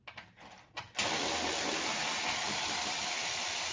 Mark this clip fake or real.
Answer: real